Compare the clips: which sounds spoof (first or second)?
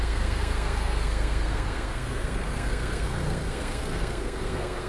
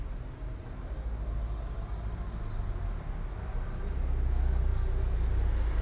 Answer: first